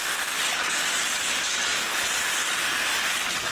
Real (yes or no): yes